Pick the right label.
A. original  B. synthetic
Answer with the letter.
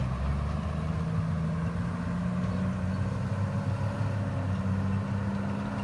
A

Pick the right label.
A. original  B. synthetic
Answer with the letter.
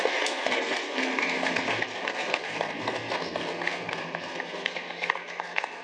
B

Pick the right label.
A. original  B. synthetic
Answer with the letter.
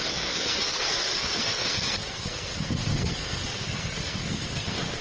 B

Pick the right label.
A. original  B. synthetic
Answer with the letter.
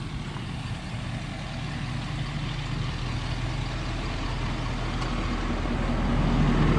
A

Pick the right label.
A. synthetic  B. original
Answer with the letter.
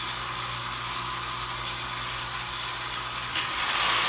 B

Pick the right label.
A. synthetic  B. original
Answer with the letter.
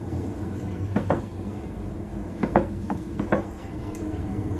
A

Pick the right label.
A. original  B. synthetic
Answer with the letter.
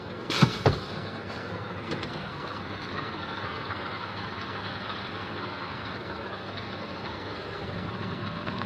B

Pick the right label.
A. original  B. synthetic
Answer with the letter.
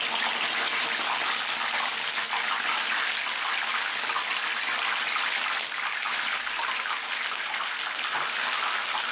A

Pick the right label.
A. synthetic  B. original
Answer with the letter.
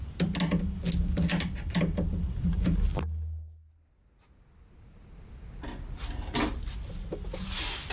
B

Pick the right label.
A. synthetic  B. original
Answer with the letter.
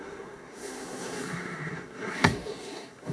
A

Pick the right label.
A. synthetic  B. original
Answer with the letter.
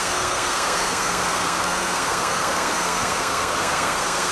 A